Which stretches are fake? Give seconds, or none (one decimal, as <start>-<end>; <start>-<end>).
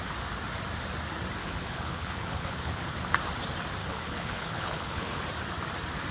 1.4-2.8; 3.8-5.2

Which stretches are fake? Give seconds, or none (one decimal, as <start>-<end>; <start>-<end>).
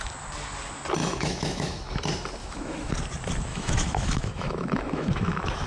1.0-1.9; 2.4-2.9; 3.5-5.7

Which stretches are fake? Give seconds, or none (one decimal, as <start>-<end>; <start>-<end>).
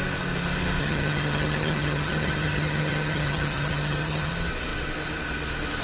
0.8-4.3